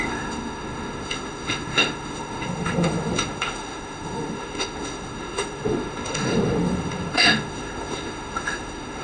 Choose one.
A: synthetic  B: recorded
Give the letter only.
A